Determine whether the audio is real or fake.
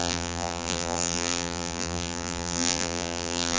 fake